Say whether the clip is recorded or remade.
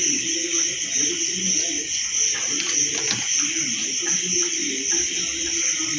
recorded